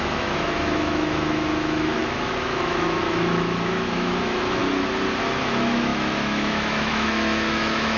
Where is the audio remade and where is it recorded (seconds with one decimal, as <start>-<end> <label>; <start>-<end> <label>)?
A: 0.0-4.6 remade; 4.6-5.2 recorded; 5.2-8.0 remade